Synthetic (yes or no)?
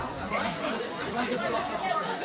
yes